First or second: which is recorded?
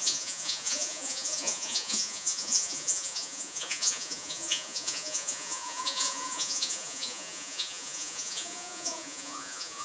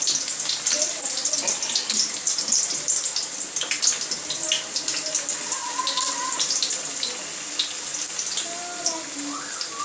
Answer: second